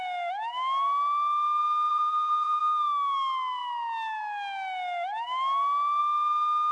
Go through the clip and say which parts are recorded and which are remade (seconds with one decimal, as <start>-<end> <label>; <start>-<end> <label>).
0.0-1.9 recorded; 1.9-2.6 remade; 2.6-6.7 recorded

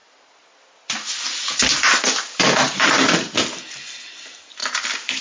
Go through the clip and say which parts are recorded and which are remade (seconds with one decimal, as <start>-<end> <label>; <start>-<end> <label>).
0.0-4.6 recorded; 4.6-5.2 remade